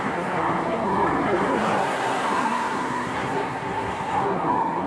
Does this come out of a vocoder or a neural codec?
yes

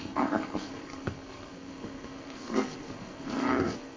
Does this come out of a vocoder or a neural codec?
yes